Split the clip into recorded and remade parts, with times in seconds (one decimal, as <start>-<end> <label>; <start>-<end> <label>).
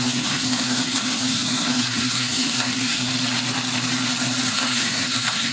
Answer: 0.0-3.1 remade; 3.1-4.5 recorded; 4.5-5.5 remade